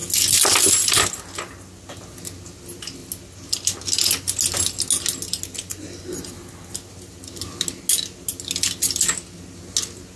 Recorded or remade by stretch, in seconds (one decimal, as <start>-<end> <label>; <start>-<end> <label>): 0.0-10.2 recorded